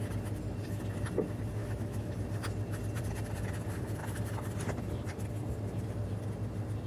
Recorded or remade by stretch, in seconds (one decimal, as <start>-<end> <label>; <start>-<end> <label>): 0.0-1.6 recorded; 1.6-2.1 remade; 2.1-6.9 recorded

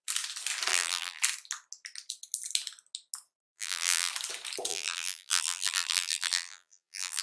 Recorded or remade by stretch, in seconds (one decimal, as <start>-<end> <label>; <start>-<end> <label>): 0.0-0.7 recorded; 0.7-1.2 remade; 1.2-3.4 recorded; 3.4-4.1 remade; 4.1-4.7 recorded; 4.7-7.2 remade

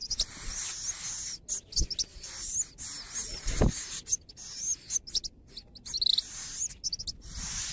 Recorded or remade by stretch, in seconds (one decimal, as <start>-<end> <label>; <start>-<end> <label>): 0.0-7.7 recorded

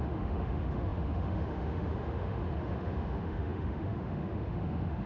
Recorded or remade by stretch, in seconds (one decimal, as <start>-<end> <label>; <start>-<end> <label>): 0.0-5.1 remade

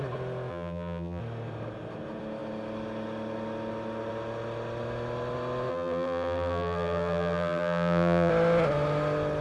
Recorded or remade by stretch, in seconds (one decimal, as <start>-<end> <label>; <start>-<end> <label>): 0.0-0.5 recorded; 0.5-1.2 remade; 1.2-5.7 recorded; 5.7-8.3 remade; 8.3-9.4 recorded

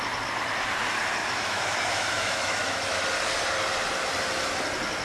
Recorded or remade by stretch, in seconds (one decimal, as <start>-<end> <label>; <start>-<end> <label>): 0.0-1.2 recorded; 1.2-3.0 remade; 3.0-5.0 recorded

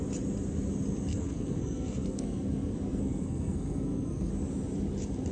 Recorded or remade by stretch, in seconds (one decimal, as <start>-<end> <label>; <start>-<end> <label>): 0.0-1.1 recorded; 1.1-4.3 remade; 4.3-5.3 recorded

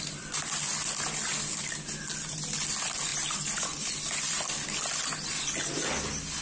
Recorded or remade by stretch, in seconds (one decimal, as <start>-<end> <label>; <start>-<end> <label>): 0.0-6.4 recorded